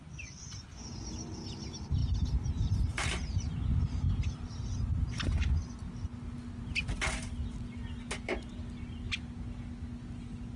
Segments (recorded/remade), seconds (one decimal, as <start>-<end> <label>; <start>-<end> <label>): 0.0-2.0 recorded; 2.0-5.0 remade; 5.0-10.6 recorded